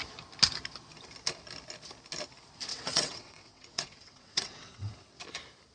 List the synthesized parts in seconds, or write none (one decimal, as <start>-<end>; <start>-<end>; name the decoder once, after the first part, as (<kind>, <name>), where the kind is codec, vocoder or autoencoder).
2.7-4.9 (vocoder, WaveNeXt)